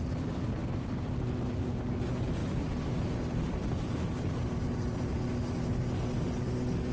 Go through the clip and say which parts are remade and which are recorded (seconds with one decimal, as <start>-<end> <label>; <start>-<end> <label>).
0.0-6.9 recorded